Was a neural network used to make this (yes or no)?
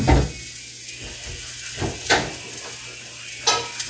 no